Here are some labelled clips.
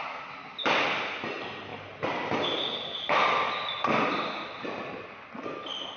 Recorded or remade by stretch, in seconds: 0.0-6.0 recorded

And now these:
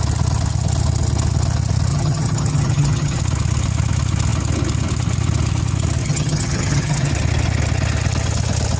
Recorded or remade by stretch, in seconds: 0.0-1.9 recorded; 1.9-3.2 remade; 3.2-6.0 recorded; 6.0-7.1 remade; 7.1-8.8 recorded